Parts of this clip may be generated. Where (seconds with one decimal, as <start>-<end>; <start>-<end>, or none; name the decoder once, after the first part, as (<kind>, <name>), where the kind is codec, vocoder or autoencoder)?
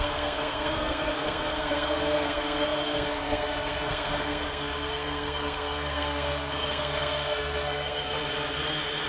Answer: 0.0-8.2 (codec, SNAC)